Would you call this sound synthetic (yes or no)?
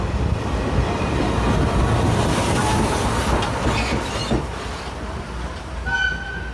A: no